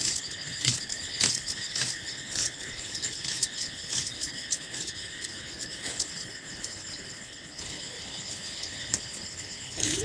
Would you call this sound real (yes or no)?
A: no